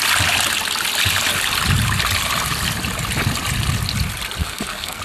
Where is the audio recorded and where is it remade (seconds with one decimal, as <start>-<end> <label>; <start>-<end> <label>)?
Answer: 0.0-4.4 recorded; 4.4-5.0 remade